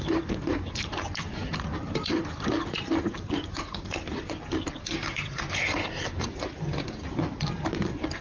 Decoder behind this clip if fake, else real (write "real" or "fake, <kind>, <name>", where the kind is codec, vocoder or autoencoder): fake, vocoder, BigVGAN v2